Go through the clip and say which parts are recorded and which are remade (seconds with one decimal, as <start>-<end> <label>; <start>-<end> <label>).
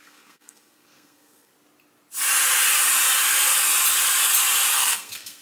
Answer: 0.0-1.5 remade; 1.5-4.7 recorded; 4.7-5.4 remade